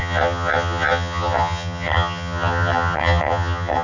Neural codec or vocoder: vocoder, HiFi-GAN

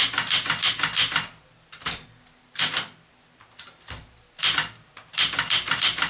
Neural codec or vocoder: none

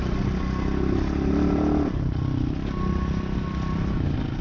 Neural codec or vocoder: none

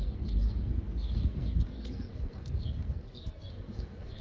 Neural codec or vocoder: codec, SNAC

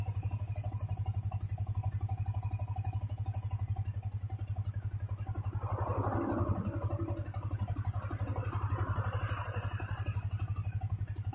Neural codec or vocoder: none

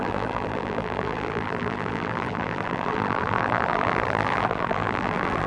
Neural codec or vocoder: vocoder, BigVGAN v2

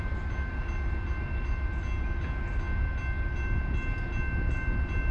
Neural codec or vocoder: none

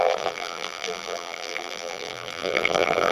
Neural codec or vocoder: vocoder, BigVGAN v2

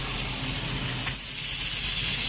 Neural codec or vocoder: none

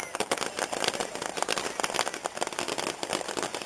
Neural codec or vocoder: none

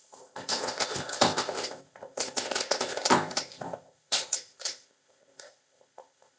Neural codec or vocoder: codec, ZipCodec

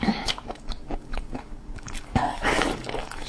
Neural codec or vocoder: codec, DAC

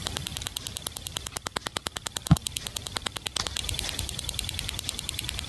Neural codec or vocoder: vocoder, BigVGAN v2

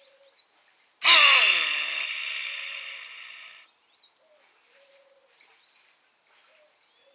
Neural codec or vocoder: none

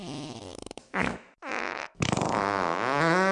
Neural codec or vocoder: autoencoder, DAC-VAE